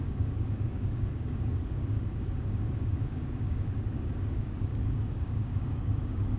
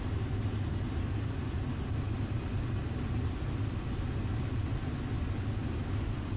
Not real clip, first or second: first